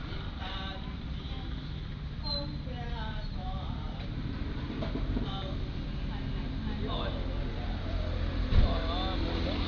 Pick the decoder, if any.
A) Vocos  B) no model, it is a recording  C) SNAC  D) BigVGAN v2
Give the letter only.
B